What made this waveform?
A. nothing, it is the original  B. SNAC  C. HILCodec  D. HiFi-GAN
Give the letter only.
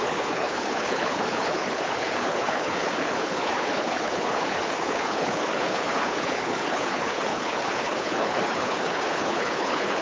C